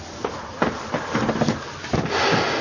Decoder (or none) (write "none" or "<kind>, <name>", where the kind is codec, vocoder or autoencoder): none